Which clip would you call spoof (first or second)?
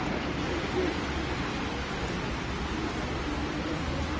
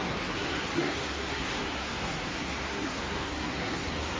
second